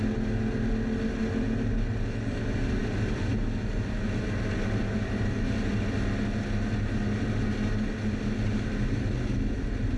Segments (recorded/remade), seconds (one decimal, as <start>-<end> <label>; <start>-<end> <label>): 0.0-10.0 recorded